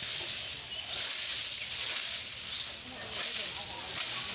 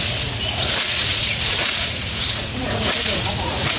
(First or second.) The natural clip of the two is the first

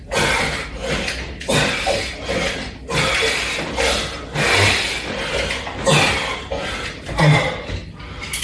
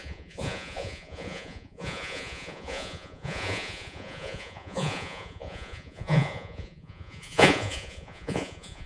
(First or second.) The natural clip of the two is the first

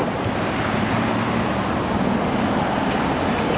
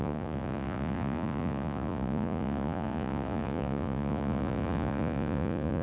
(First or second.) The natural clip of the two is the first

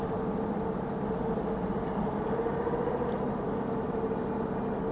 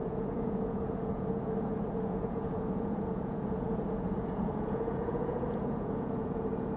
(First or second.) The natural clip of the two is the first